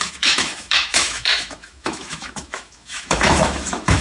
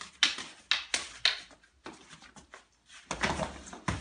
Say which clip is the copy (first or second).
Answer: first